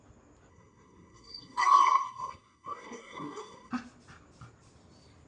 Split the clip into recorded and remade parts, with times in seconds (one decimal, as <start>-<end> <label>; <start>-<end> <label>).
0.0-0.5 recorded; 0.5-3.7 remade; 3.7-5.3 recorded